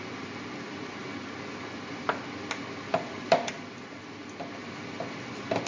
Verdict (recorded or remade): recorded